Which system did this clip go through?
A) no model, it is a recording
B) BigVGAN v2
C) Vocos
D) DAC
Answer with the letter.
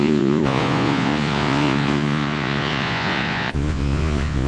C